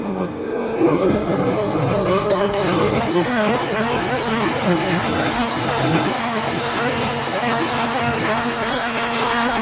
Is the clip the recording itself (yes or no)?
no